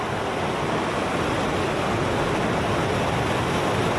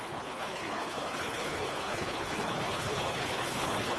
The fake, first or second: second